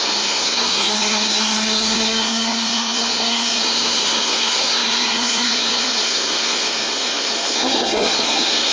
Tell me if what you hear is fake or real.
fake